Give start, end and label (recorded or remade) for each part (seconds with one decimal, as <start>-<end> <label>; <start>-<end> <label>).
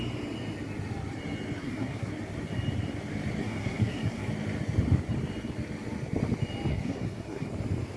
0.0-1.6 recorded; 1.6-2.1 remade; 2.1-3.4 recorded; 3.4-4.3 remade; 4.3-6.7 recorded; 6.7-7.5 remade; 7.5-8.0 recorded